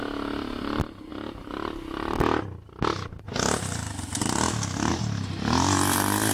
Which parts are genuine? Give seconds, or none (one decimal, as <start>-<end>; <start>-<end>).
0.0-6.3